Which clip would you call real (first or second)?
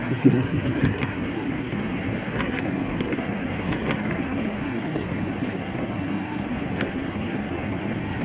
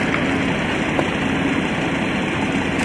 second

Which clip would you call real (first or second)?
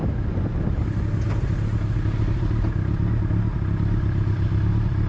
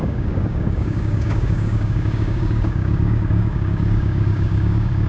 first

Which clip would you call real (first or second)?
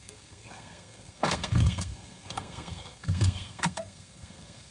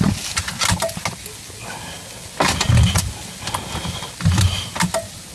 second